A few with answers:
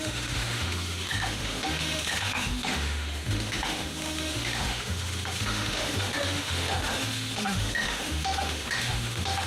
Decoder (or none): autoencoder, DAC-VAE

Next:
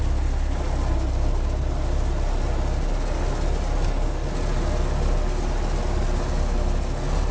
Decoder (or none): none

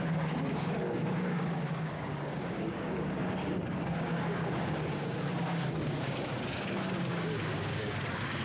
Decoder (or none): codec, DAC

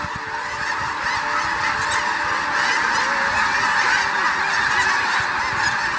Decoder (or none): none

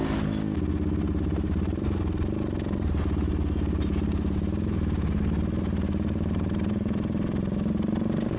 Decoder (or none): none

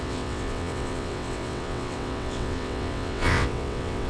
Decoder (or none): vocoder, WaveNeXt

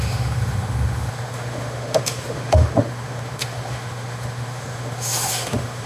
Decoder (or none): autoencoder, DAC-VAE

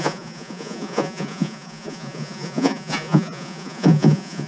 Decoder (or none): vocoder, Vocos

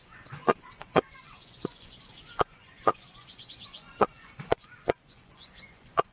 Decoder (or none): vocoder, Vocos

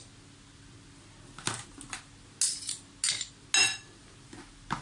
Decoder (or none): none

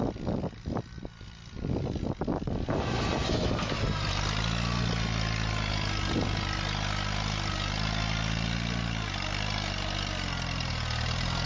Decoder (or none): none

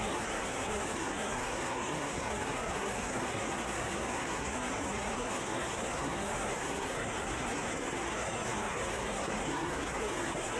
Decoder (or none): codec, SNAC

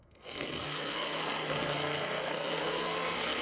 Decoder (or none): codec, SNAC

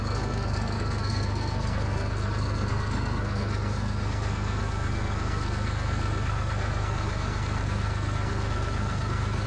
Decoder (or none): codec, SNAC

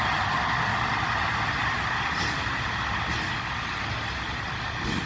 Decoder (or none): none